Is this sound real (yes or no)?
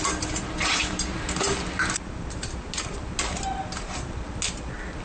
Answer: yes